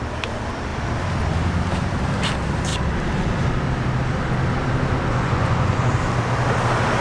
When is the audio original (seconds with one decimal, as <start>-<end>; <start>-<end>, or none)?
0.0-5.1; 5.9-7.0